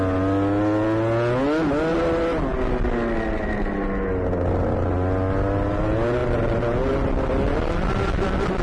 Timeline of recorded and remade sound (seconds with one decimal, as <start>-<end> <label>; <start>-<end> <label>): 0.0-8.6 recorded